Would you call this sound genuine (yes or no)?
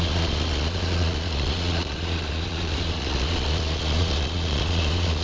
no